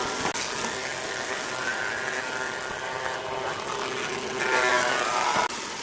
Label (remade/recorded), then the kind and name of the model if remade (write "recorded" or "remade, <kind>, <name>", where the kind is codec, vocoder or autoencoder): recorded